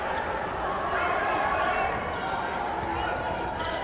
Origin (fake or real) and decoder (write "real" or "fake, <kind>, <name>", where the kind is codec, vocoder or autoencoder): fake, vocoder, BigVGAN v2